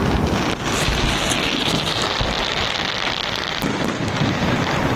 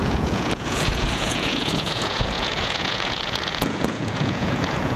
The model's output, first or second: second